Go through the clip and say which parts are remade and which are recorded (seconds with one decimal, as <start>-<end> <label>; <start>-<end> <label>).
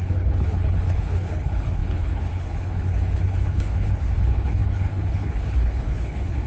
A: 0.0-6.5 remade